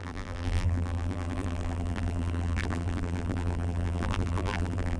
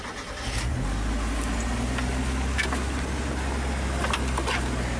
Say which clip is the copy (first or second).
first